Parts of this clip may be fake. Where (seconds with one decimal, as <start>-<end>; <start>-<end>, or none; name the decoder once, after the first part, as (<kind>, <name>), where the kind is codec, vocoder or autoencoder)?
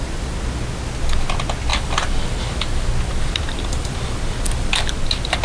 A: 1.7-4.9 (vocoder, BigVGAN v2)